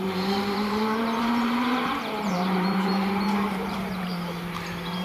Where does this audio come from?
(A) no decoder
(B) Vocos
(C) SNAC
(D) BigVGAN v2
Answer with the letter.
D